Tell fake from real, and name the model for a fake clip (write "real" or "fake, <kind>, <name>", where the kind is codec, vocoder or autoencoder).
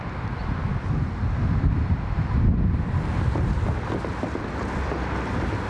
real